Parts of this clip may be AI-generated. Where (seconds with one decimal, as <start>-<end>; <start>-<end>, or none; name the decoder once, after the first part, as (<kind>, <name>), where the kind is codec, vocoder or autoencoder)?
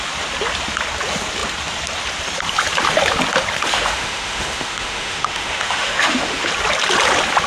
3.7-6.5 (autoencoder, DAC-VAE)